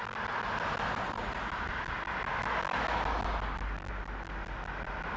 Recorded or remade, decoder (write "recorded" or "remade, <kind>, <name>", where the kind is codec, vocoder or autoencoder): recorded